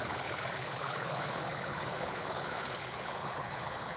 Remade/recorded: remade